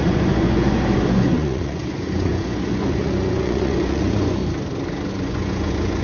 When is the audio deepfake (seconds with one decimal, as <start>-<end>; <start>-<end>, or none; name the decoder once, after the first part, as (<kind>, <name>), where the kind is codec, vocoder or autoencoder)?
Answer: 0.0-4.4 (vocoder, Vocos); 5.1-6.0